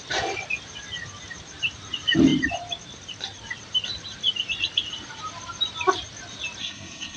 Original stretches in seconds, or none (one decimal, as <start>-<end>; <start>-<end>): 0.0-6.6